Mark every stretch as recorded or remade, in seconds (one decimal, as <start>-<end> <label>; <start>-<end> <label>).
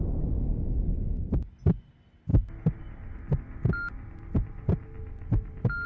0.0-5.9 recorded